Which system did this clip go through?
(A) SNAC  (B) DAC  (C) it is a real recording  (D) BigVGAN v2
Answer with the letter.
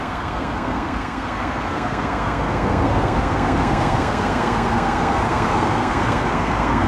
A